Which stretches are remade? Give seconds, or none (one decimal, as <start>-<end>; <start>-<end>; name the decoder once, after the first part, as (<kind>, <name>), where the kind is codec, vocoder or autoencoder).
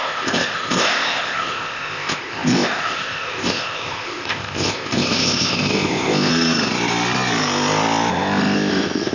0.0-6.3 (codec, ZipCodec); 8.1-9.1